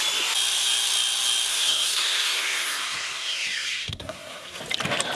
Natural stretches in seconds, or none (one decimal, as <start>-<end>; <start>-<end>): 0.0-1.5; 4.6-5.2